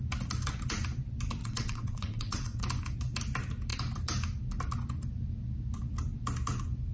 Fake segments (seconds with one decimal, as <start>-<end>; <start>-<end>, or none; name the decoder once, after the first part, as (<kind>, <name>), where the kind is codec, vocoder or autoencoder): 1.4-2.6 (vocoder, WaveNeXt)